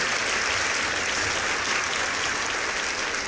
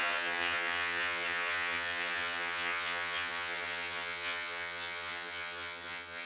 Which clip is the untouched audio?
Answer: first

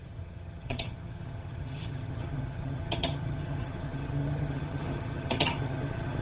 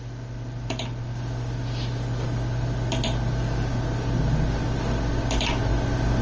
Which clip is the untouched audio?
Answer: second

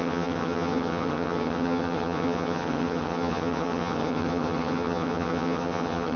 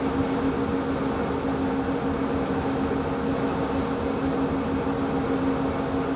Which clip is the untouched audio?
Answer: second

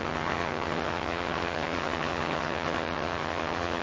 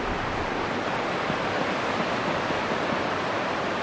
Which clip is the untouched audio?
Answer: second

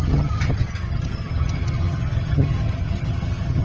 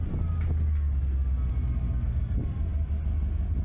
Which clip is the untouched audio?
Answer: second